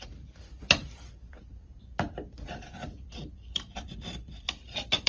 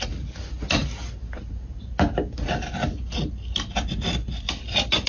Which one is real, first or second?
second